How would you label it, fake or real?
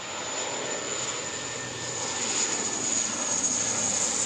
real